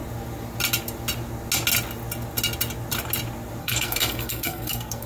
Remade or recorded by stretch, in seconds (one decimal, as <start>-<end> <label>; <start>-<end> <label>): 0.0-3.6 recorded; 3.6-5.1 remade